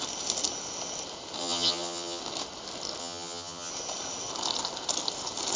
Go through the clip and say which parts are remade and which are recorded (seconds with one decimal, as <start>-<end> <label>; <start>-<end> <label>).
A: 0.0-1.4 recorded; 1.4-2.2 remade; 2.2-3.0 recorded; 3.0-3.7 remade; 3.7-5.6 recorded